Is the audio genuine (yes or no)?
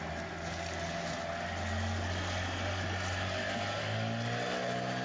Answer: yes